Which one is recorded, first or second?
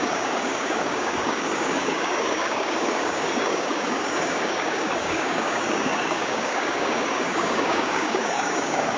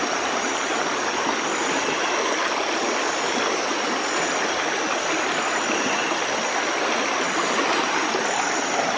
second